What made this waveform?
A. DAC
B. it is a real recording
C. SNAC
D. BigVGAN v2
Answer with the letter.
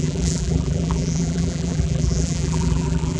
D